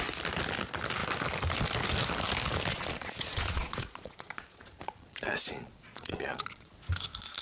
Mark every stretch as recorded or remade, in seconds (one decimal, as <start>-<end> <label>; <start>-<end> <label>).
0.0-2.7 recorded; 2.7-6.9 remade; 6.9-7.4 recorded

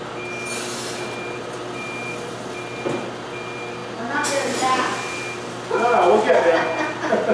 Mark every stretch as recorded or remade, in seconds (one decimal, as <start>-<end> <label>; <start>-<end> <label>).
0.0-7.3 recorded

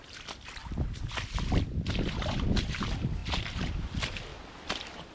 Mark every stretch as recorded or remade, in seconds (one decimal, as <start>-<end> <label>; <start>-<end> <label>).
0.0-3.2 remade; 3.2-3.8 recorded; 3.8-4.3 remade; 4.3-5.1 recorded

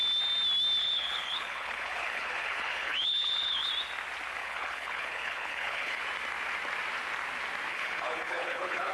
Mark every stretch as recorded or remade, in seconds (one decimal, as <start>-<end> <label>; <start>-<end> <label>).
0.0-0.8 recorded; 0.8-3.7 remade; 3.7-4.4 recorded; 4.4-6.0 remade; 6.0-7.7 recorded; 7.7-8.9 remade

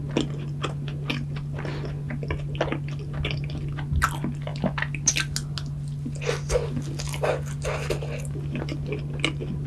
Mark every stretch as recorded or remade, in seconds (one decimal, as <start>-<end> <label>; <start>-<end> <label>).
0.0-9.7 recorded

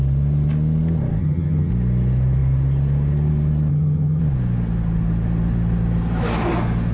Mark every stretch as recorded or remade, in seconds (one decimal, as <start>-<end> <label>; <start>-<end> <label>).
0.0-1.2 recorded; 1.2-1.7 remade; 1.7-3.7 recorded; 3.7-4.2 remade; 4.2-6.9 recorded